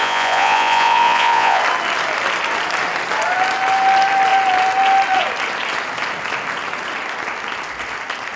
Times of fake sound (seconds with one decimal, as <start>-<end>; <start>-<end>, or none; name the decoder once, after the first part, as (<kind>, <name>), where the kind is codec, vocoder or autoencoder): 0.0-1.6 (vocoder, Vocos)